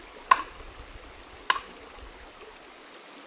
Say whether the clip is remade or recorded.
recorded